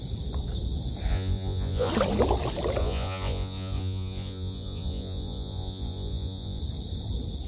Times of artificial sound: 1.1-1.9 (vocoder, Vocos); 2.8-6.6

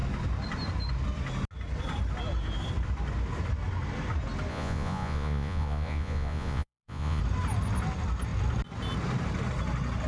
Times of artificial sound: 4.5-7.2 (vocoder, Vocos)

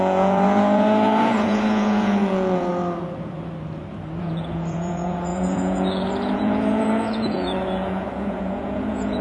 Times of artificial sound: 0.0-2.7 (vocoder, Vocos); 4.2-9.2

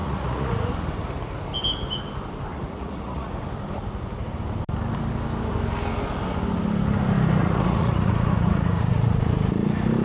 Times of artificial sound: 0.0-0.7 (vocoder, Vocos); 2.5-3.3; 7.4-9.3

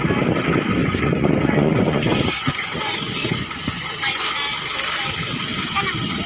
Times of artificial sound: 0.8-4.3 (vocoder, Vocos)

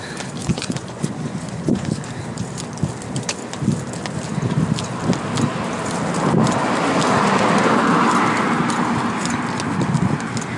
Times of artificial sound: 0.4-1.9 (vocoder, Vocos)

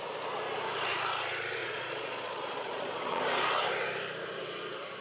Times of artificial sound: 1.6-3.2 (vocoder, Vocos)

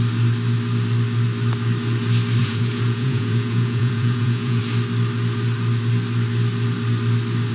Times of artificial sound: 2.4-4.6 (vocoder, Vocos)